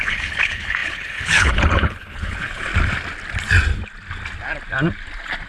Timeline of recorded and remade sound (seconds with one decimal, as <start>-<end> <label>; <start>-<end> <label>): 0.0-2.7 remade; 2.7-5.5 recorded